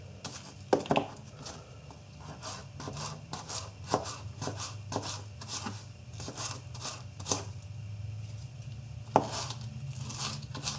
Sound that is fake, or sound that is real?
real